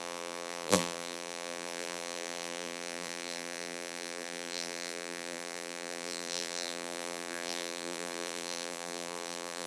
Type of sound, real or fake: fake